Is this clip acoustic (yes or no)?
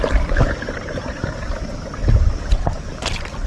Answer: yes